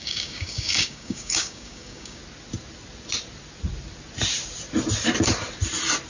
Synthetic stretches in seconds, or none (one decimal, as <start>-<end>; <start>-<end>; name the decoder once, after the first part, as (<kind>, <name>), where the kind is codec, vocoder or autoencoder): 0.0-2.2 (codec, DAC)

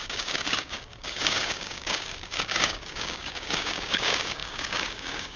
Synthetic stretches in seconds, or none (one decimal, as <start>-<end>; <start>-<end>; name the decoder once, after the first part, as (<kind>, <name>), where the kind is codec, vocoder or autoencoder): 0.0-5.4 (codec, DAC)

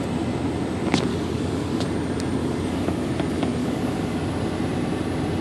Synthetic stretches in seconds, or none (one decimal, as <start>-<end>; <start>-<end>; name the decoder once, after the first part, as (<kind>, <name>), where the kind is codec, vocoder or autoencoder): 1.1-1.8 (codec, DAC); 2.4-3.1; 3.6-4.2

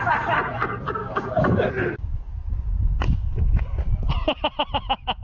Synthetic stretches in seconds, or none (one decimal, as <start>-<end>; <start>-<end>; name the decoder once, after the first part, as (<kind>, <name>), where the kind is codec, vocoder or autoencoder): 1.0-1.7 (codec, DAC)